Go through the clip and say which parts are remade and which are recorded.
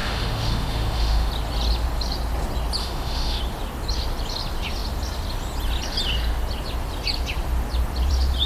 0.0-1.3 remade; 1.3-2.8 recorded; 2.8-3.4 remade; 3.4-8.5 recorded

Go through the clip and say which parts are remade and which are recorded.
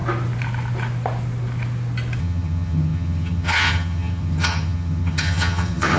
0.0-2.2 recorded; 2.2-6.0 remade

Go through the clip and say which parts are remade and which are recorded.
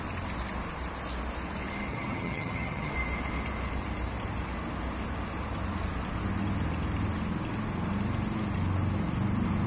0.0-1.9 recorded; 1.9-2.9 remade; 2.9-9.7 recorded